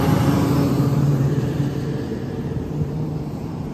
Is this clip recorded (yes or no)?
no